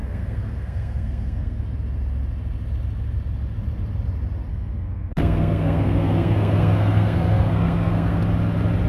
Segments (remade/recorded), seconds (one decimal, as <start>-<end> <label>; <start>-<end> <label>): 0.0-1.6 remade; 1.6-4.5 recorded; 4.5-8.2 remade; 8.2-8.9 recorded